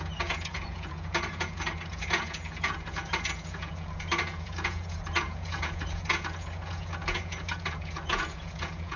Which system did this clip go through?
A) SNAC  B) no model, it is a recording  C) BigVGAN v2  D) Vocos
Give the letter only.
D